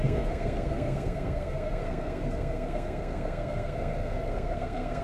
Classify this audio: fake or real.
fake